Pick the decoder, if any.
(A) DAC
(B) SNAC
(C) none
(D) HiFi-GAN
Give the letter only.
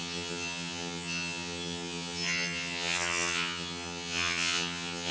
D